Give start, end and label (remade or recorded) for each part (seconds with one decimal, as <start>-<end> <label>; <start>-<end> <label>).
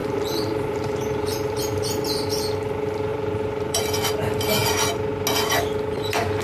0.0-1.6 remade; 1.6-3.1 recorded; 3.1-3.8 remade; 3.8-6.4 recorded